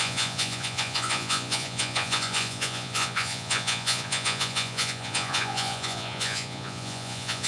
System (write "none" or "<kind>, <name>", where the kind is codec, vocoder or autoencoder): vocoder, Vocos